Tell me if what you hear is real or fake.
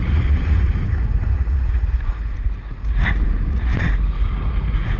fake